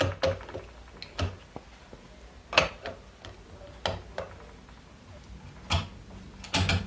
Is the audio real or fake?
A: real